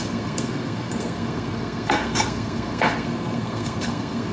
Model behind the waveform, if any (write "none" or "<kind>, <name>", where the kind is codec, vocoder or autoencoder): codec, SNAC